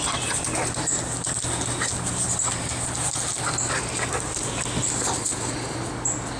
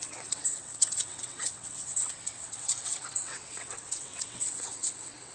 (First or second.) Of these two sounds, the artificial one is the second